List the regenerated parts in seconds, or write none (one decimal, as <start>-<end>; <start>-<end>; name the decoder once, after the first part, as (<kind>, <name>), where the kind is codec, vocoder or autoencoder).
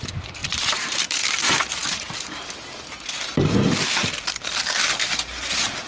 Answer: 0.4-1.4 (vocoder, BigVGAN v2)